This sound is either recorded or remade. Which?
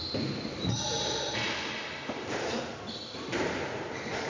recorded